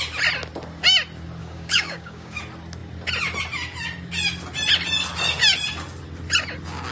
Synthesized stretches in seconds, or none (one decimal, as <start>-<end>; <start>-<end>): 1.4-2.4